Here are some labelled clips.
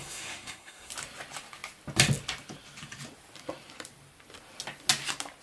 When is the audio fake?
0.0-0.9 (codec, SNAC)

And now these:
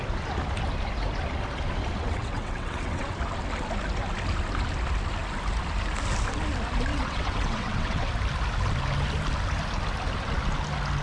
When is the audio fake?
2.0-3.0 (vocoder, WaveNeXt); 6.9-8.1